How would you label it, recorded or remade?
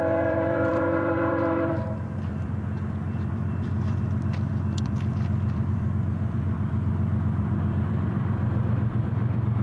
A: remade